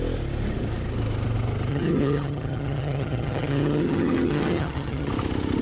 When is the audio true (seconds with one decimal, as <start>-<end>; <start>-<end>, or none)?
0.0-1.7; 5.1-5.6